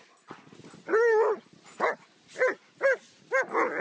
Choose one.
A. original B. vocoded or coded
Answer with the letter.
A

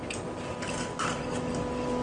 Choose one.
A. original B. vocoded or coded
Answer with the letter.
A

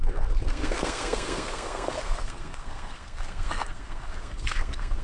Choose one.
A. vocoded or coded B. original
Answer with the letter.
A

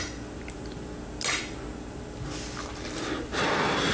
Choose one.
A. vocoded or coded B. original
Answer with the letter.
B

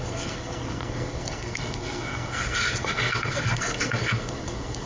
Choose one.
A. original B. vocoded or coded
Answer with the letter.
B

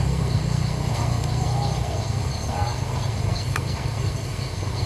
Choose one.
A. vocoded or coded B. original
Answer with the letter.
A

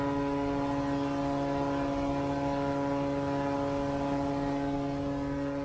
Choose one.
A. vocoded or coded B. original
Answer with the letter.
B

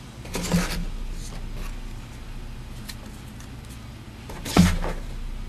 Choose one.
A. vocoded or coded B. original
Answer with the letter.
B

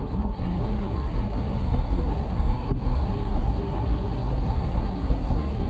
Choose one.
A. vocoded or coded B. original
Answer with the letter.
A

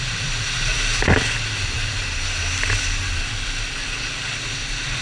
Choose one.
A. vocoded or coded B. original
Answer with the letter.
B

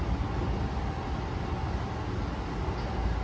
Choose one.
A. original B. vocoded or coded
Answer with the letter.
A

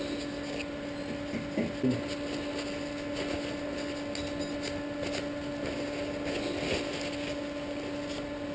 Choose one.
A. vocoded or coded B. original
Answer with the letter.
B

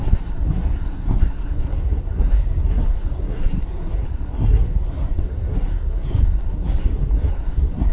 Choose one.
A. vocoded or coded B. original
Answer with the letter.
A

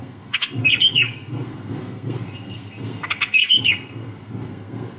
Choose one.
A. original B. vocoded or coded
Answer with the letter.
B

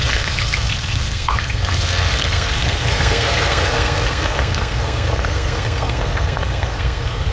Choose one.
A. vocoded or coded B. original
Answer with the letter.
A